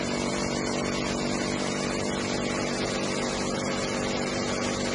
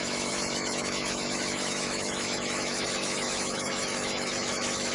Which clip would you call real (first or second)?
first